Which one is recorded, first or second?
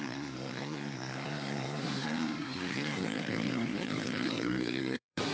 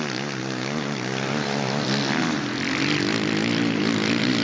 second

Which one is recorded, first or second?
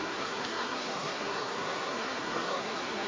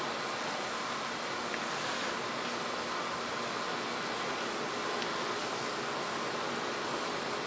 second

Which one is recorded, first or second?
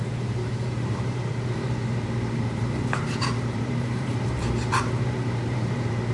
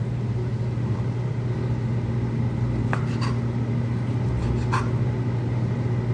second